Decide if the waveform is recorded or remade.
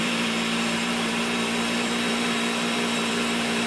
remade